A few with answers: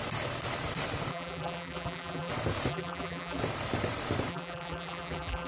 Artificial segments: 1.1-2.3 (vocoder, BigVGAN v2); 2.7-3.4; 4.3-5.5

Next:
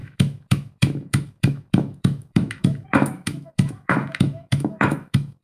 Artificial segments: 0.0-5.4 (autoencoder, DAC-VAE)

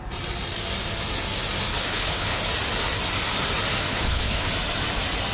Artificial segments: 1.7-2.4 (codec, HILCodec); 3.9-4.5

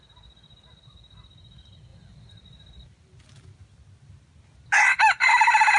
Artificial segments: none